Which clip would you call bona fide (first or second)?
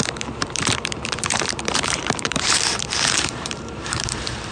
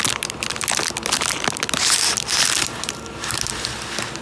second